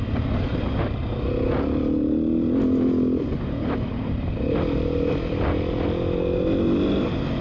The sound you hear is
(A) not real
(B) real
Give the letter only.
B